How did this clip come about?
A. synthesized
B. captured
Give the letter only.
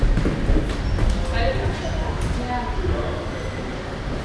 B